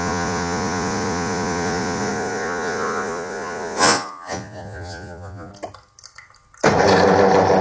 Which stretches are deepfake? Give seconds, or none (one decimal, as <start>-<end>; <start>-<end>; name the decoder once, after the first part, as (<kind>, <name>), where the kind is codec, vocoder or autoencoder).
0.0-5.5 (vocoder, Vocos)